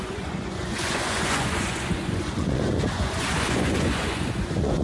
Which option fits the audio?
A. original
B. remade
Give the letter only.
B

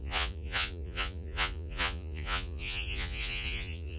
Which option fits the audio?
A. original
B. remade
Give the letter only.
B